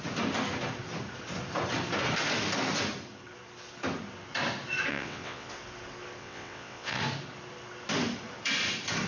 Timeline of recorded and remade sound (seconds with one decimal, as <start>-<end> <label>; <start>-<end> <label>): 0.0-4.9 recorded; 4.9-5.5 remade; 5.5-6.2 recorded; 6.2-7.0 remade; 7.0-9.1 recorded